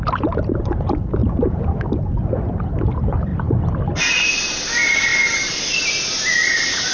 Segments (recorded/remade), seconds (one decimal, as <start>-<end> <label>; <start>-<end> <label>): 0.0-6.9 recorded